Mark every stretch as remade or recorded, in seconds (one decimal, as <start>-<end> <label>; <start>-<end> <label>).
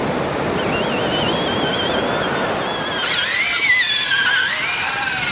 0.0-5.3 recorded